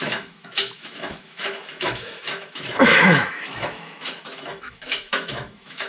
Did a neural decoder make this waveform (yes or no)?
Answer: yes